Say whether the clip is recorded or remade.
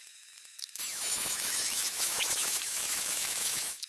remade